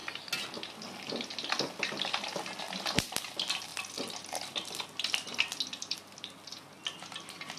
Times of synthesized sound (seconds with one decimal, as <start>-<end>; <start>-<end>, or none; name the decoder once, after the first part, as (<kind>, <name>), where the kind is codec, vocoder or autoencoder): none